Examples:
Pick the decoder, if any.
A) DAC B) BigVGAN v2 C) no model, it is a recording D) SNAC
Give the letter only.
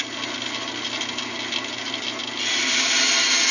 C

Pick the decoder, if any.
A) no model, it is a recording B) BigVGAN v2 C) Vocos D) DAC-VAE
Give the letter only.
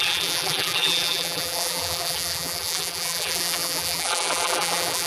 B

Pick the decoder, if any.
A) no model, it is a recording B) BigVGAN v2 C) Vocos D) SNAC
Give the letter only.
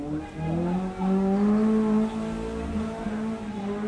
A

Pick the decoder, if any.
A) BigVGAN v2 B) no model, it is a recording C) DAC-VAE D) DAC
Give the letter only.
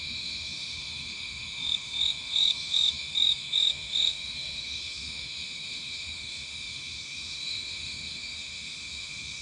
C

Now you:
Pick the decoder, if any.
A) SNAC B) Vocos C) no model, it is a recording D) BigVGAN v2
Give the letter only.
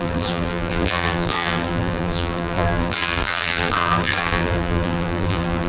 D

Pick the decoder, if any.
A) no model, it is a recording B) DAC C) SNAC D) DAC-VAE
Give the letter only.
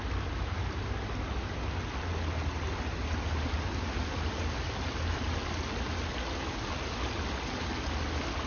A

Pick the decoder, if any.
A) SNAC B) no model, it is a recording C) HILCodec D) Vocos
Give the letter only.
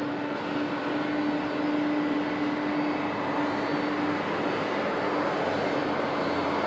B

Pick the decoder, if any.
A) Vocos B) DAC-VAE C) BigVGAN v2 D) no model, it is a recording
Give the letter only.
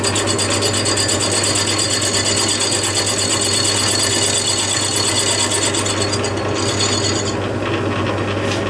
D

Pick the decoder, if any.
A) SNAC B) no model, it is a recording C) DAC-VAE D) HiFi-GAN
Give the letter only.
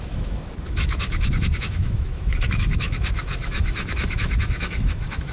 C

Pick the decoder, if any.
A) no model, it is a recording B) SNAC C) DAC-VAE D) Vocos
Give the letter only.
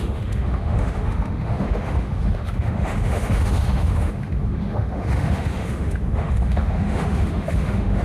C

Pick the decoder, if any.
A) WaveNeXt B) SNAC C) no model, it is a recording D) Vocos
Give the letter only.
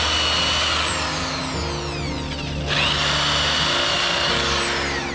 C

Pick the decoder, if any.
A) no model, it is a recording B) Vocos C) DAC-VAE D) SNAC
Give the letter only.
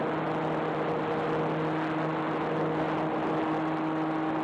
A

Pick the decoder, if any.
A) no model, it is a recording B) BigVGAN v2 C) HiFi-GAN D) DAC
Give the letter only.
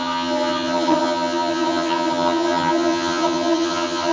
C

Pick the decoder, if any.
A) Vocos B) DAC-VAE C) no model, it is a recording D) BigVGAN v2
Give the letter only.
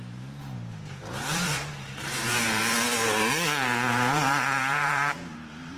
D